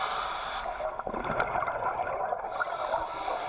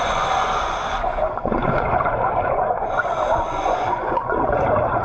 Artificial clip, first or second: second